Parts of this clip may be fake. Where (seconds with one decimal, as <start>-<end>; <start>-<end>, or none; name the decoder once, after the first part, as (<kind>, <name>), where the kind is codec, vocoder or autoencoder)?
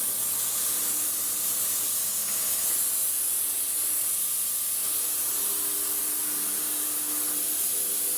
2.0-2.7 (autoencoder, DAC-VAE)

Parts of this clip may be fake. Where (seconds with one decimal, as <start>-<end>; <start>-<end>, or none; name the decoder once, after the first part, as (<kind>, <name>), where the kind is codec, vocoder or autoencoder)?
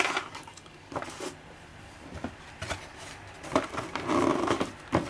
none